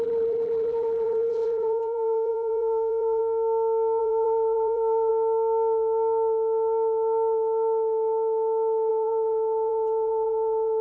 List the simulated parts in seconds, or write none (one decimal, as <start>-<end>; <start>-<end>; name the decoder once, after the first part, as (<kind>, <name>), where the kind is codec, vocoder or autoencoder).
0.0-3.2 (vocoder, BigVGAN v2); 4.0-5.1; 8.9-10.8